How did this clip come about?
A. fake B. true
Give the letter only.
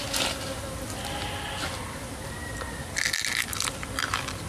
B